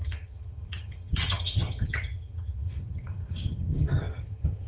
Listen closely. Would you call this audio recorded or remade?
remade